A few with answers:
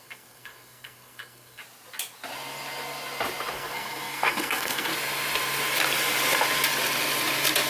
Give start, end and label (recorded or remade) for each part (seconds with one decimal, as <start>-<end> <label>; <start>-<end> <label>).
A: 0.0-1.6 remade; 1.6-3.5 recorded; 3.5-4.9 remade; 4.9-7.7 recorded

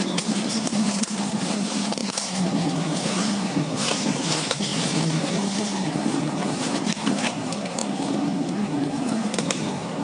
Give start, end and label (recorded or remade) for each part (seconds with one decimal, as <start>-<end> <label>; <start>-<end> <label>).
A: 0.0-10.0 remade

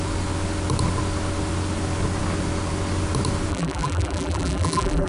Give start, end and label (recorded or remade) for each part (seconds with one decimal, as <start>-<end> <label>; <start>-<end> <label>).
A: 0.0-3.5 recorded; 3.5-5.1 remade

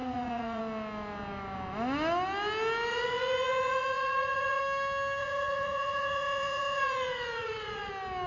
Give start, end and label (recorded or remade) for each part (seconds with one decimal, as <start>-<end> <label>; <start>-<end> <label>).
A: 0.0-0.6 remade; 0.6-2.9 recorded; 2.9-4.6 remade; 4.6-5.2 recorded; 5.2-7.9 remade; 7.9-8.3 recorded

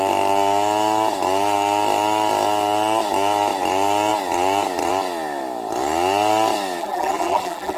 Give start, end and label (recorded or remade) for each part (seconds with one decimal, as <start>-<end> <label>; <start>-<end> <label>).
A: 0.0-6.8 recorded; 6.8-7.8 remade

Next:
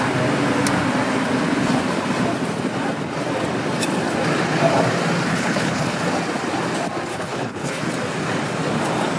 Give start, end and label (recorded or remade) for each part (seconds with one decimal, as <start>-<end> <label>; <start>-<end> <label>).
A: 0.0-5.3 recorded; 5.3-6.0 remade; 6.0-7.1 recorded; 7.1-7.9 remade; 7.9-9.2 recorded